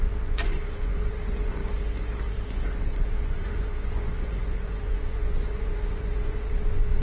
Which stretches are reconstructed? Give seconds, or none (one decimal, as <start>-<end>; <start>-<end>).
0.0-7.0